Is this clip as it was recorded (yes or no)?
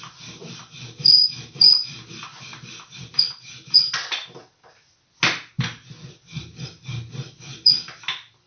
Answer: yes